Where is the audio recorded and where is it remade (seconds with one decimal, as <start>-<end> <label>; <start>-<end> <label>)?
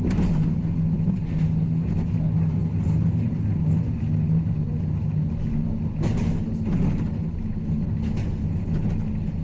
0.0-9.4 recorded